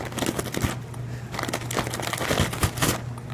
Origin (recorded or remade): recorded